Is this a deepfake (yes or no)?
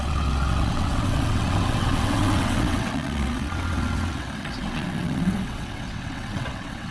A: yes